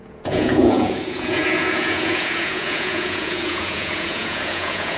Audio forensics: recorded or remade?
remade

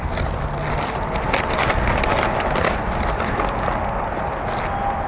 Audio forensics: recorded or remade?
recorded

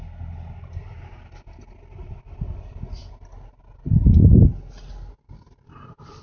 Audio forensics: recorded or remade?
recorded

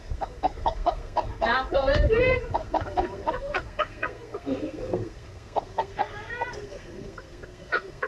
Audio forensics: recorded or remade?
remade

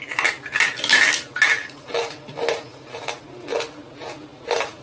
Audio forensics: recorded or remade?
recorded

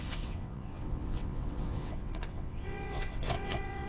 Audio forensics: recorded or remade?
remade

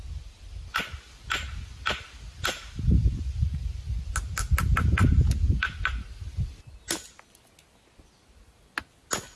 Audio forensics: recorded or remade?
recorded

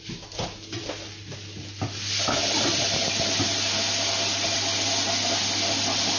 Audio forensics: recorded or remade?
recorded